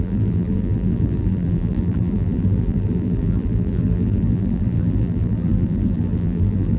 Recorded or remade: remade